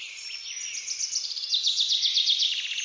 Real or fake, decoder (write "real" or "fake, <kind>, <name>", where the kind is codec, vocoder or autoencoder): real